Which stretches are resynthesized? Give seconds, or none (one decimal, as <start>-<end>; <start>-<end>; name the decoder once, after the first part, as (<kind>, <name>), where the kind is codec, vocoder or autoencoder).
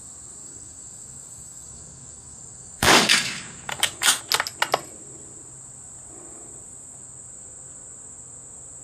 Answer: 0.4-4.2 (codec, DAC)